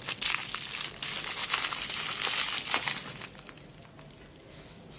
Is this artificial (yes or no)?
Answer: no